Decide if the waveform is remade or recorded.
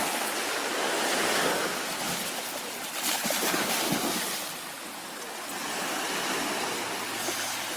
recorded